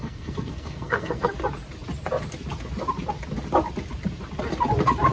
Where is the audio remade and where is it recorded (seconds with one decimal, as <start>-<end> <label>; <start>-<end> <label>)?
0.0-1.3 remade; 1.3-5.1 recorded